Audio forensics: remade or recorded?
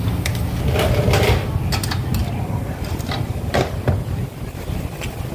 recorded